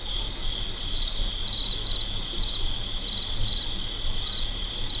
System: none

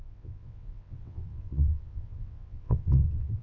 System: vocoder, WaveNeXt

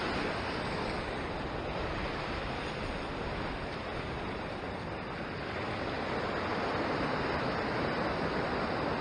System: none